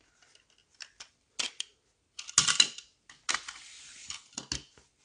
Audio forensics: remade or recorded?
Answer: recorded